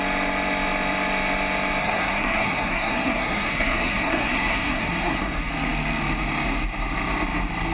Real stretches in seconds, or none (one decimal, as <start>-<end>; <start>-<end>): 0.0-1.8; 5.5-7.7